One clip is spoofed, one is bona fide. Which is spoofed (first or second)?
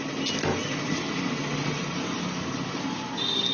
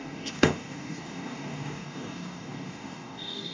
second